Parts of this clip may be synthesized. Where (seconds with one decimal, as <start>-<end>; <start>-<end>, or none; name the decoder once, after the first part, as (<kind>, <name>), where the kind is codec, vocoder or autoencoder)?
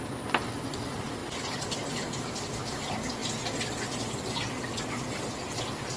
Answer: 0.0-3.2 (vocoder, BigVGAN v2); 4.9-6.0